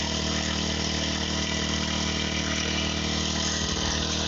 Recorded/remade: recorded